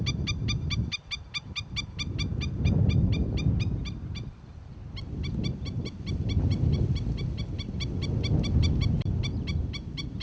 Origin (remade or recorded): recorded